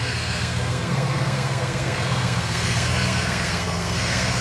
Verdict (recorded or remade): remade